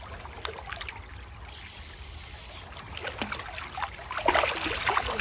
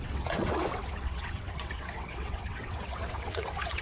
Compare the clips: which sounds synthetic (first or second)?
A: second